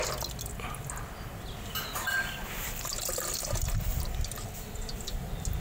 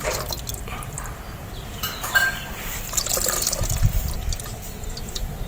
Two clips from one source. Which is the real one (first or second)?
first